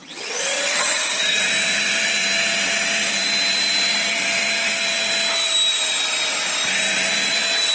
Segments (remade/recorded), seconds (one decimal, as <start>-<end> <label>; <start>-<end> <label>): 0.0-1.4 remade; 1.4-7.7 recorded

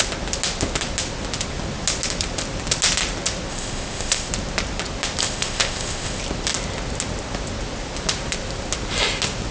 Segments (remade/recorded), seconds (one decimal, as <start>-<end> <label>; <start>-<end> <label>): 0.0-3.5 recorded; 3.5-4.3 remade; 4.3-5.2 recorded; 5.2-6.2 remade; 6.2-9.5 recorded

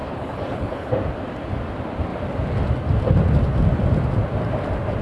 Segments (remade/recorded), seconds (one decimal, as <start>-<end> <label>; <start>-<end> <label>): 0.0-0.9 remade; 0.9-5.0 recorded

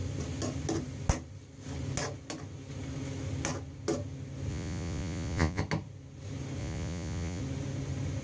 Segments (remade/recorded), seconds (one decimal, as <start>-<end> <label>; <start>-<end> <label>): 0.0-4.5 recorded; 4.5-5.6 remade; 5.6-6.6 recorded; 6.6-7.4 remade; 7.4-8.2 recorded

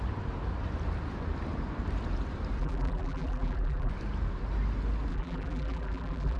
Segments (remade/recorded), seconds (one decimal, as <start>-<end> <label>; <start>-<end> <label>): 0.0-2.6 recorded; 2.6-3.9 remade; 3.9-5.1 recorded; 5.1-6.4 remade